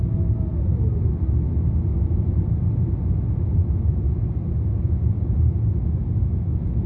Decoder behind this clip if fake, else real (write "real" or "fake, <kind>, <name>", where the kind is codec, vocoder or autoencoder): real